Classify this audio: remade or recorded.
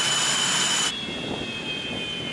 recorded